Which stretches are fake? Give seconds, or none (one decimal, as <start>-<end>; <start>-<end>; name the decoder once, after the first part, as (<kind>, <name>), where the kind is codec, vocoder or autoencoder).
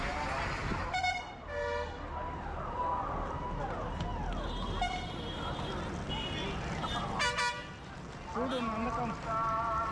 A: none